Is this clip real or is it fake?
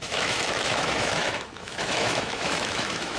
fake